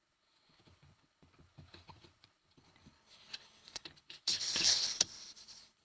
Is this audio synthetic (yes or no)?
yes